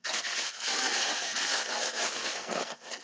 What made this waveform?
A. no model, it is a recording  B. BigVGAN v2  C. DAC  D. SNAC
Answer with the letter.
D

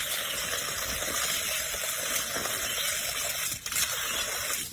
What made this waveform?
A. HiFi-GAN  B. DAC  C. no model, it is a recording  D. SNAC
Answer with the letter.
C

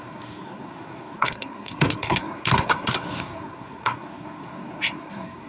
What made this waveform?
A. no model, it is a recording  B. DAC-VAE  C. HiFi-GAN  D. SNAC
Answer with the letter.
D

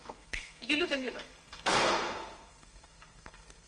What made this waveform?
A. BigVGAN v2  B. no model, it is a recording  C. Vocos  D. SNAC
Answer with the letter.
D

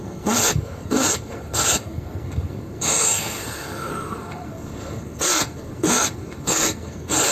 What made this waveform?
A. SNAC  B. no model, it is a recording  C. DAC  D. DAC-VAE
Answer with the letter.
A